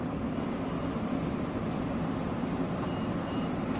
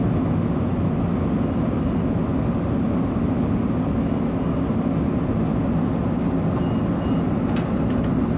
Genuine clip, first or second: second